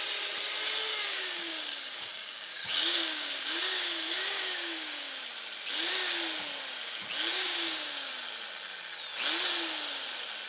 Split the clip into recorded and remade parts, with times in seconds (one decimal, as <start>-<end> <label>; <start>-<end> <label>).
0.0-0.9 recorded; 0.9-5.2 remade; 5.2-7.3 recorded; 7.3-8.1 remade; 8.1-10.5 recorded